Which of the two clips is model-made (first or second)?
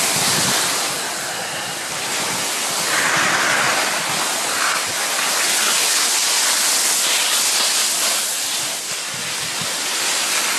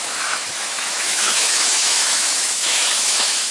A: second